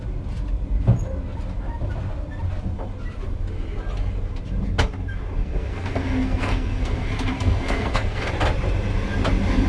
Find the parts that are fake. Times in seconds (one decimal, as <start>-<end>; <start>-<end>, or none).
5.4-8.3